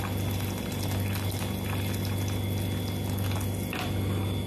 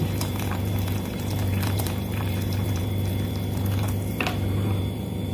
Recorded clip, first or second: first